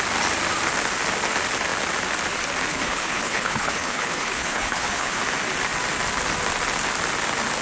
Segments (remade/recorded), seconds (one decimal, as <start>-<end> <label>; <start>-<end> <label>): 0.0-2.7 recorded; 2.7-5.2 remade; 5.2-7.6 recorded